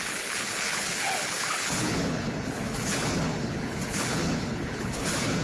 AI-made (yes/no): yes